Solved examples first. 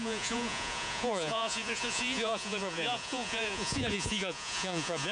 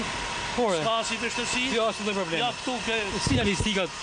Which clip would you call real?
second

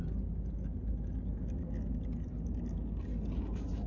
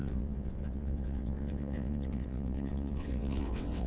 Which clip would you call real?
first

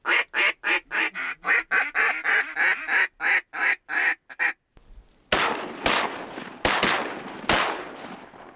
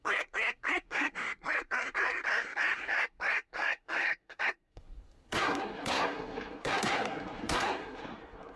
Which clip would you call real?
first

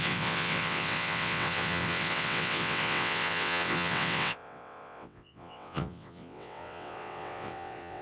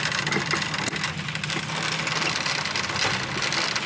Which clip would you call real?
second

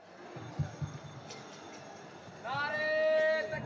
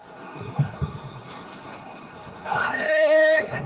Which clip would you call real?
first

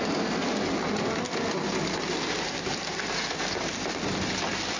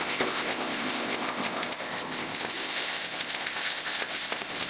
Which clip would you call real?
first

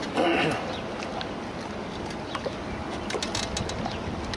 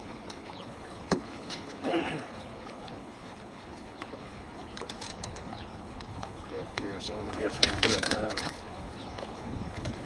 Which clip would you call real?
first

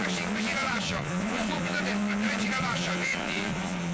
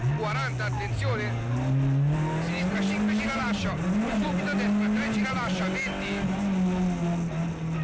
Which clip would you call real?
second